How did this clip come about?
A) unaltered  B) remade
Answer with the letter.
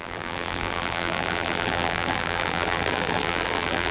B